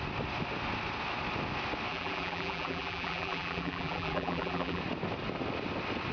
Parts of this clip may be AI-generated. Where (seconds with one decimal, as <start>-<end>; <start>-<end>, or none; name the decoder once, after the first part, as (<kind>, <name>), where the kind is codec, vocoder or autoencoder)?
1.9-4.8 (vocoder, BigVGAN v2)